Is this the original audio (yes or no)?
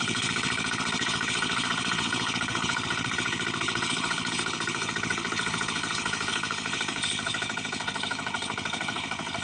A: no